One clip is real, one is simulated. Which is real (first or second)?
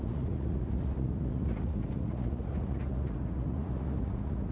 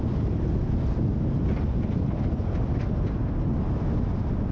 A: second